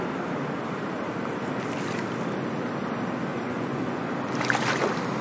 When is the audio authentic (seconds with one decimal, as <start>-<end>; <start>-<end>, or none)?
0.0-3.3; 4.1-5.2